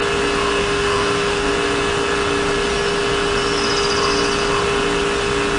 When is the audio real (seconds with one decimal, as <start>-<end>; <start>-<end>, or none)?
0.0-0.6; 1.5-5.6